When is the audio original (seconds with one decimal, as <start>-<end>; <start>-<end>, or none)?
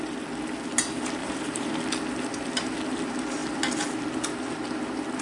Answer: 0.0-1.2; 1.7-5.2